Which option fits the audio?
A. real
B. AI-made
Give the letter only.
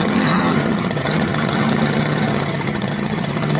B